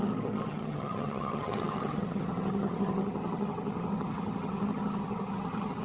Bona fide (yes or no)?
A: no